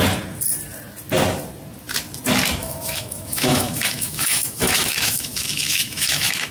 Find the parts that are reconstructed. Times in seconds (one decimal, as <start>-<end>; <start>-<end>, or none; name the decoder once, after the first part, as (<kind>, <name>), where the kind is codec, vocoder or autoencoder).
2.6-6.5 (autoencoder, DAC-VAE)